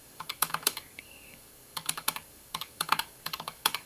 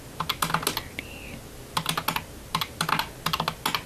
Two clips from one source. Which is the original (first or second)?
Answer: second